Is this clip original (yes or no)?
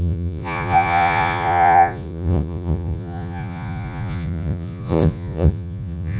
no